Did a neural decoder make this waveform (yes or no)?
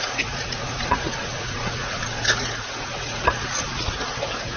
yes